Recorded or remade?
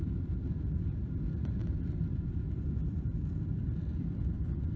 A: remade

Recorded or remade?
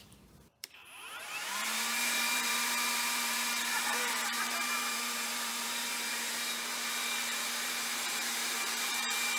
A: remade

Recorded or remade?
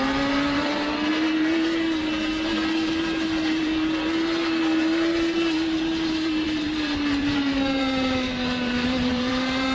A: remade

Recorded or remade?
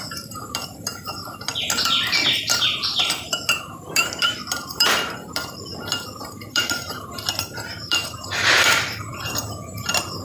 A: remade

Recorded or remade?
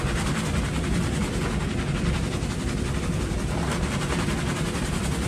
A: recorded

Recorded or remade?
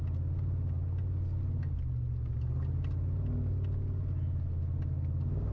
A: recorded